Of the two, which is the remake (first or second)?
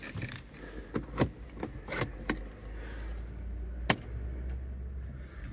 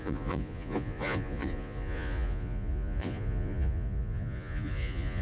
second